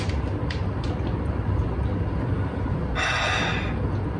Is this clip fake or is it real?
real